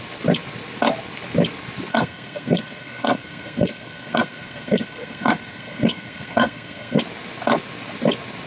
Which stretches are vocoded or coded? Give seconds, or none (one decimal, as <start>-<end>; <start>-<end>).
1.9-7.0